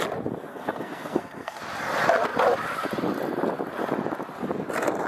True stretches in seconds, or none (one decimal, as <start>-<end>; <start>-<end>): 0.0-0.5; 1.6-5.1